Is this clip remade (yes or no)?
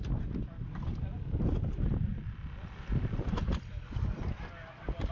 no